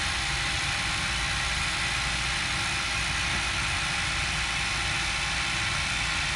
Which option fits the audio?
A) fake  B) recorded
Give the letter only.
B